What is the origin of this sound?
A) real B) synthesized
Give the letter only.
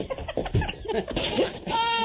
A